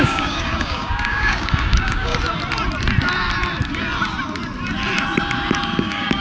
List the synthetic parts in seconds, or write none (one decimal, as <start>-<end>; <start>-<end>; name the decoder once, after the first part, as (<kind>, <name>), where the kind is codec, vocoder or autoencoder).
0.0-2.1 (codec, DAC); 5.8-6.2